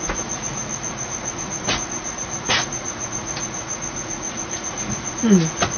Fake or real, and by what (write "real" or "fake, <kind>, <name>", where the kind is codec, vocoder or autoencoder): fake, vocoder, Vocos